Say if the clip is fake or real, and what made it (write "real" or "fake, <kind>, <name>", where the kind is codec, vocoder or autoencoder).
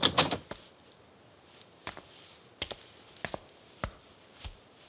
real